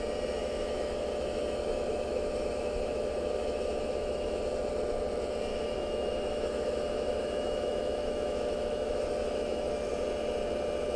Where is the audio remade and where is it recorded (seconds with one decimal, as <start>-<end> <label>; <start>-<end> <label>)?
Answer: 0.0-0.4 recorded; 0.4-4.4 remade; 4.4-5.5 recorded; 5.5-9.9 remade; 9.9-11.0 recorded